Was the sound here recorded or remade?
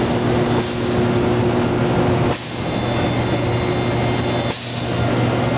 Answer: recorded